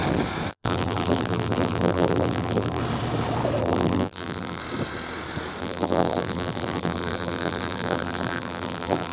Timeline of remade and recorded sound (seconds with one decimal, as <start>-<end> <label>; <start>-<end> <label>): 0.0-0.5 recorded; 0.5-2.8 remade; 2.8-3.6 recorded; 3.6-4.6 remade; 4.6-5.6 recorded; 5.6-9.1 remade